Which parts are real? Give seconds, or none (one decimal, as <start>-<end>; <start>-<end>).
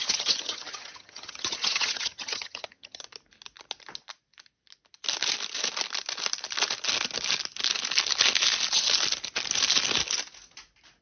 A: 3.0-11.0